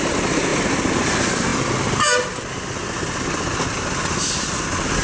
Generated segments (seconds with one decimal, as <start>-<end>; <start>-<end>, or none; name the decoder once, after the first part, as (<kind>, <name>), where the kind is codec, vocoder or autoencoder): none